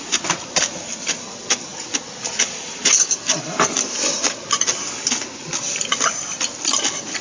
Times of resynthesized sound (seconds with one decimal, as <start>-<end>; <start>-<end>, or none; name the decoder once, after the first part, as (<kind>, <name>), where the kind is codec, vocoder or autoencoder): none